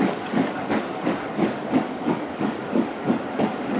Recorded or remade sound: remade